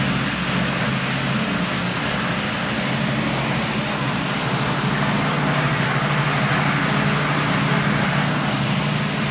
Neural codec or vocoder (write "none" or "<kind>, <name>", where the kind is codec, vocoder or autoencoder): none